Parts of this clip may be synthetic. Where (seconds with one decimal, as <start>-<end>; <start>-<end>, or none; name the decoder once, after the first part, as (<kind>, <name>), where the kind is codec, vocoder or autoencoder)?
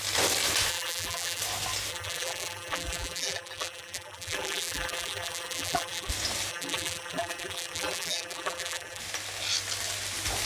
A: 0.7-1.4 (vocoder, BigVGAN v2); 1.9-6.1; 6.5-9.0